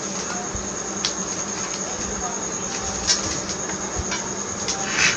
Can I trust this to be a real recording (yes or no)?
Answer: yes